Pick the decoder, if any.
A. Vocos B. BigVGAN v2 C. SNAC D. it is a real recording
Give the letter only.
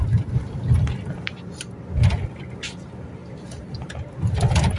D